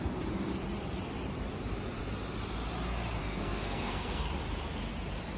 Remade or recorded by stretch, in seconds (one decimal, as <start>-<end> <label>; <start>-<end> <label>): 0.0-3.2 recorded; 3.2-4.3 remade; 4.3-5.4 recorded